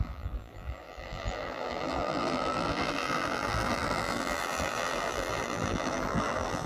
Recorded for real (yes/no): no